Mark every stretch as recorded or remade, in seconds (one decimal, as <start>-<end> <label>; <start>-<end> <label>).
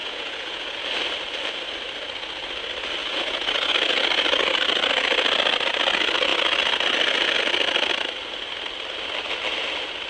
0.0-0.8 remade; 0.8-3.0 recorded; 3.0-3.7 remade; 3.7-10.1 recorded